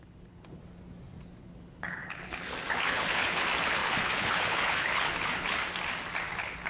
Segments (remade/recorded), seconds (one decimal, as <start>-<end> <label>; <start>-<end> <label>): 0.0-0.6 remade; 0.6-1.4 recorded; 1.4-5.6 remade; 5.6-6.3 recorded; 6.3-6.7 remade